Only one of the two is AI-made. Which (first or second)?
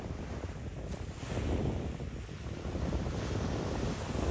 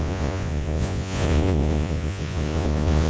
second